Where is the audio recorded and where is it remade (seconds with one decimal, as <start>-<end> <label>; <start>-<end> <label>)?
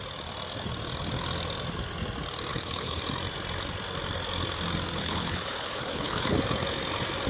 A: 0.0-2.5 recorded; 2.5-3.0 remade; 3.0-5.0 recorded; 5.0-6.3 remade; 6.3-7.3 recorded